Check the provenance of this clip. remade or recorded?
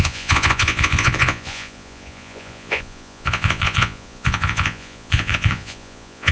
remade